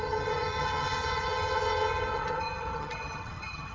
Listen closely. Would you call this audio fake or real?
fake